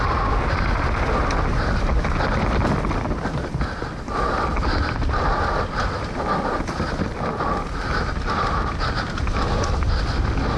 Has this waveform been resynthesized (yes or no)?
no